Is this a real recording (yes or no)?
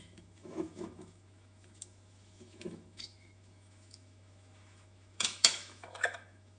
no